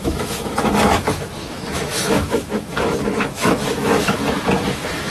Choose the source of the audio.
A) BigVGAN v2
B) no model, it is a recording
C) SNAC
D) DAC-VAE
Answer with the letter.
D